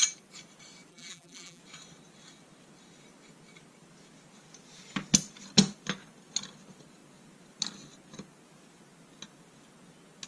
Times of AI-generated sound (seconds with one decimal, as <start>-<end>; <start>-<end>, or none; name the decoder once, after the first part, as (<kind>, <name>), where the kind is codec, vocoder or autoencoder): 0.9-1.6 (vocoder, BigVGAN v2)

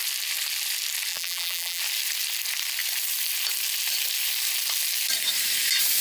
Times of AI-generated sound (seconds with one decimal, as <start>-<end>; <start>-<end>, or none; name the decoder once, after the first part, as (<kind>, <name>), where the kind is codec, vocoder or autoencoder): 1.1-1.8 (vocoder, BigVGAN v2)

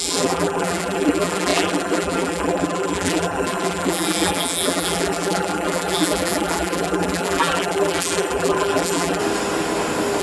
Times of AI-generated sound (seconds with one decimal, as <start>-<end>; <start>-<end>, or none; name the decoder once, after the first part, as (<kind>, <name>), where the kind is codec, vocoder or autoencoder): 0.0-9.2 (vocoder, BigVGAN v2)